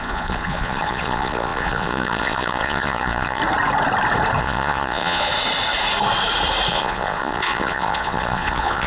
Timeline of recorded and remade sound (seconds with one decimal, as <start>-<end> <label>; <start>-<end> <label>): 0.0-3.4 remade; 3.4-4.4 recorded; 4.4-5.3 remade; 5.3-6.7 recorded; 6.7-8.9 remade